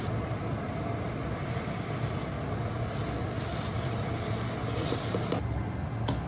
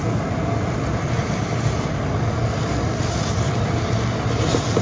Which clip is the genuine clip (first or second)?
first